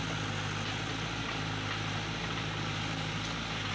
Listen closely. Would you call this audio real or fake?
real